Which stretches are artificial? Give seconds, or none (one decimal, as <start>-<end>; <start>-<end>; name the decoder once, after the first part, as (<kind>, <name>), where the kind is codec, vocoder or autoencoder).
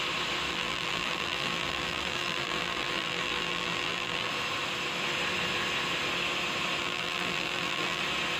0.5-4.3 (vocoder, BigVGAN v2); 6.8-8.0